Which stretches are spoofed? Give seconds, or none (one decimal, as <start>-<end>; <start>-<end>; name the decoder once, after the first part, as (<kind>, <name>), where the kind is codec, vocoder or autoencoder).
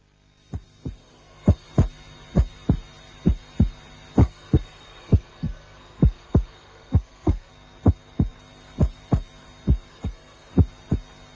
1.0-1.7 (codec, SNAC); 4.2-7.5; 9.9-10.5